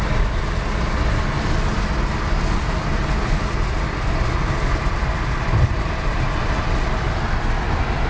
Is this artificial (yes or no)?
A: no